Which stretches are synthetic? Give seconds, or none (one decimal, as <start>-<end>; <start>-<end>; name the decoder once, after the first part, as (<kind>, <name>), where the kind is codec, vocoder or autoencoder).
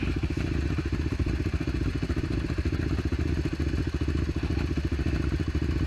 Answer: none